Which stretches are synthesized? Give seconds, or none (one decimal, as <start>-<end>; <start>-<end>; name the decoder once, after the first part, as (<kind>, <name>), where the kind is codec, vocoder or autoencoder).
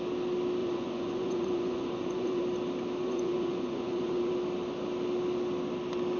0.6-2.4 (vocoder, Vocos); 3.0-4.3